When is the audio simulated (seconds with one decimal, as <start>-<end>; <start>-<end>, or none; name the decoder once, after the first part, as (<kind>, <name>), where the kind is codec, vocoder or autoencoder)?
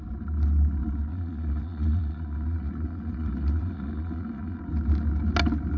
1.1-4.6 (vocoder, Vocos)